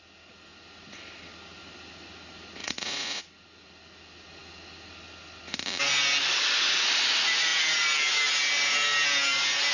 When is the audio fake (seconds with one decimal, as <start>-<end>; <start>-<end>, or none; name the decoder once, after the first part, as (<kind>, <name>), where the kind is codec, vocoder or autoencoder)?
2.6-3.2 (vocoder, Vocos)